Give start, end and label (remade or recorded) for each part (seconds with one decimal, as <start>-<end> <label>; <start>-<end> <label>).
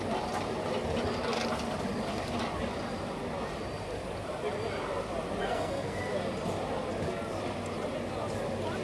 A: 0.0-5.4 recorded; 5.4-6.1 remade; 6.1-8.8 recorded